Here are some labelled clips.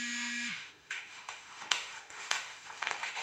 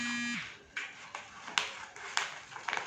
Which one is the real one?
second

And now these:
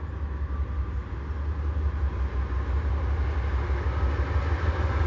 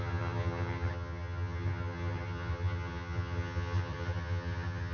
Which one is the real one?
first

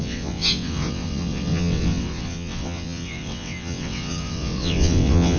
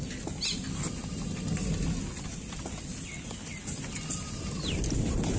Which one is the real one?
second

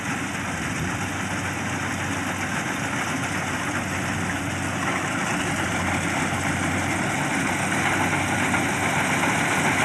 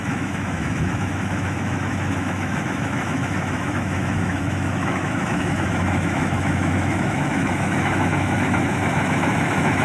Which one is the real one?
first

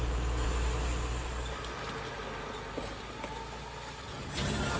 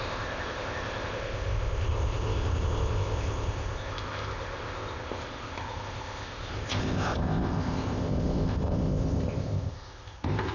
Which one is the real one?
first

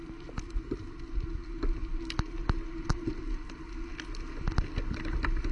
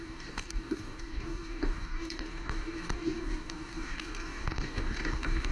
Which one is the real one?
first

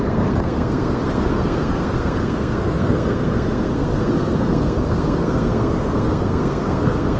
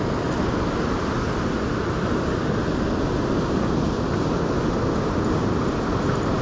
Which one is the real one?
second